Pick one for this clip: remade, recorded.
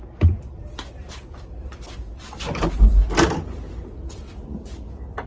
recorded